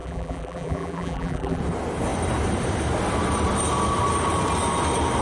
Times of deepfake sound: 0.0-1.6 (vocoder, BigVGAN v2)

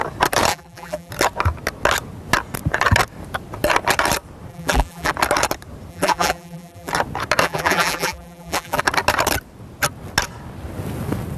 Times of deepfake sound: 0.5-1.1 (vocoder, BigVGAN v2); 4.5-5.1; 5.9-6.9; 7.4-8.8

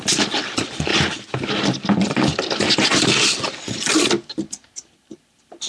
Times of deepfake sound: none

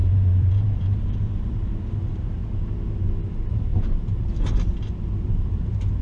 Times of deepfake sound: 0.0-2.4 (vocoder, BigVGAN v2); 3.3-6.0

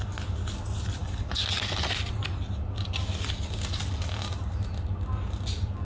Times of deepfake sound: none

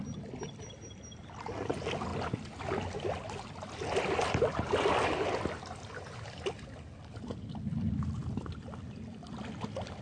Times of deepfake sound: none